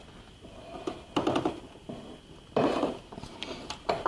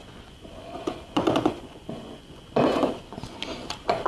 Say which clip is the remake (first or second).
second